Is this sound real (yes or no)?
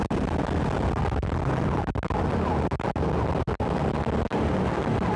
yes